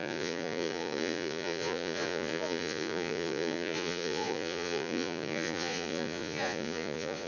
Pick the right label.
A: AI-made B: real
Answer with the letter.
A